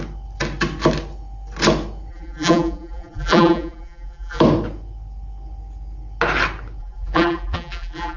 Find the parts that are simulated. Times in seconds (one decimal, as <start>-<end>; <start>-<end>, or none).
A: 2.1-4.4; 6.8-8.2